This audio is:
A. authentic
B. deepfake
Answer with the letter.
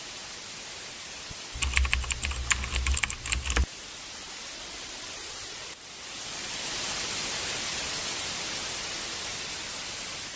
A